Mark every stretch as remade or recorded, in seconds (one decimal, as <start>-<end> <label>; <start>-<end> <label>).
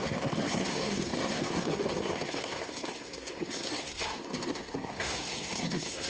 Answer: 0.0-6.1 remade